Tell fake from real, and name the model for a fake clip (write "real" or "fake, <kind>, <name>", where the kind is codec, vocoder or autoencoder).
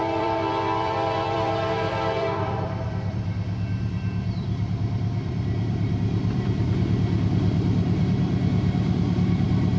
fake, vocoder, BigVGAN v2